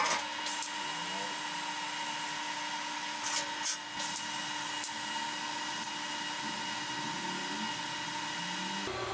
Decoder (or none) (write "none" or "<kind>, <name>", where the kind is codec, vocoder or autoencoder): none